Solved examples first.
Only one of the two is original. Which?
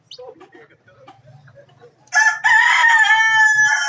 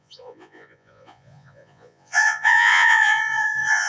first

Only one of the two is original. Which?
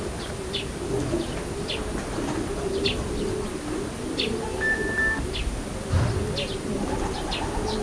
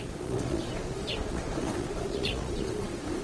first